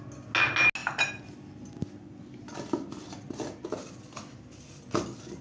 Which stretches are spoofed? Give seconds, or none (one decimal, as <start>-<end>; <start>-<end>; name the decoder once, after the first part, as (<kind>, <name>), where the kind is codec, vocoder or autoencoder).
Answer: none

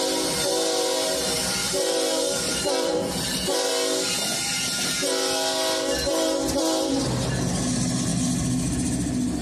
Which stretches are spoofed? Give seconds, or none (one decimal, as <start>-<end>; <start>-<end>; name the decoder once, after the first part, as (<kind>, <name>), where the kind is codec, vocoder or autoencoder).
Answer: 1.6-3.7 (vocoder, BigVGAN v2)

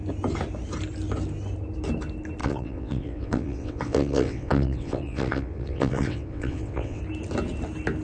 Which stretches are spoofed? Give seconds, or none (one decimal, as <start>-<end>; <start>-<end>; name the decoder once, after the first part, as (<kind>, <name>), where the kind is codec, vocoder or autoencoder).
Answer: 2.4-7.0 (vocoder, WaveNeXt)

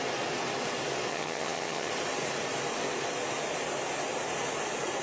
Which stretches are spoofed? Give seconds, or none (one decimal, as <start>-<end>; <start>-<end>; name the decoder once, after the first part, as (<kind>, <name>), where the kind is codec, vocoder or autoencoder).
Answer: 1.1-1.9 (vocoder, HiFi-GAN)

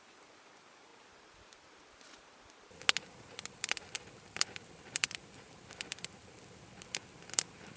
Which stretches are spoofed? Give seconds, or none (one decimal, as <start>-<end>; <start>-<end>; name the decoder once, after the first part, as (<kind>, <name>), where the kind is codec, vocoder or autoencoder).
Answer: 0.0-0.9 (vocoder, BigVGAN v2); 3.3-7.8

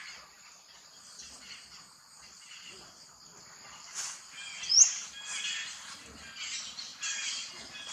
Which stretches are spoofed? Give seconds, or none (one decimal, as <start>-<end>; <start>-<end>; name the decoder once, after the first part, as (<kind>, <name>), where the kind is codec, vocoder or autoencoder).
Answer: none